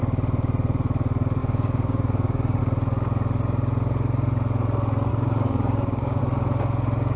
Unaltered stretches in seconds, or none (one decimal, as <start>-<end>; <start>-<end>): 0.0-1.4; 2.6-5.1; 6.2-7.2